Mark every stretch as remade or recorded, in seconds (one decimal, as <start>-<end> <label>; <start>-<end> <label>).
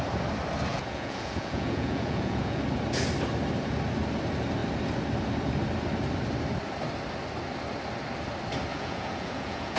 0.0-0.7 recorded; 0.7-2.6 remade; 2.6-8.7 recorded; 8.7-9.8 remade